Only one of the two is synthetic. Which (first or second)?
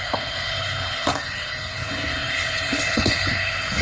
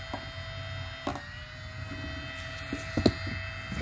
first